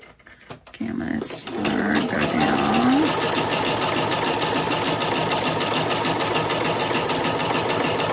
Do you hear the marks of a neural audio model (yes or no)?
no